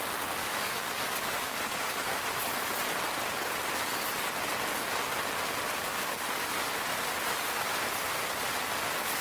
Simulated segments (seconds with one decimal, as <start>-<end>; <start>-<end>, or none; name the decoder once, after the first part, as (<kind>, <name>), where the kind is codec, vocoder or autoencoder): 0.4-2.2 (codec, DAC); 5.8-6.7